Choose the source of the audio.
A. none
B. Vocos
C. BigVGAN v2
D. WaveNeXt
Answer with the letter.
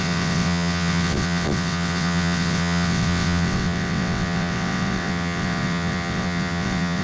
D